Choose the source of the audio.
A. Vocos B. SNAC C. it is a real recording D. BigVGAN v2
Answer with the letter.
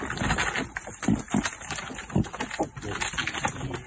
C